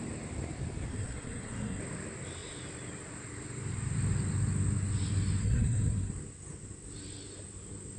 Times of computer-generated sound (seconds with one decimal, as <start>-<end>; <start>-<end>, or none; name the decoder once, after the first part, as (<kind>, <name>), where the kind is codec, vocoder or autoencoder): 0.9-1.8 (codec, SNAC); 5.4-6.1